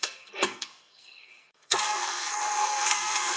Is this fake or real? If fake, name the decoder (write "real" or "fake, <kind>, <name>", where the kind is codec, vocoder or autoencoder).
fake, codec, SNAC